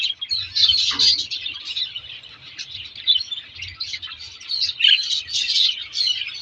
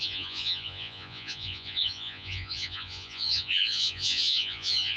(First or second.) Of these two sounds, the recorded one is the first